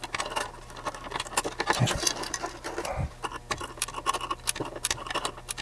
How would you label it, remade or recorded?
recorded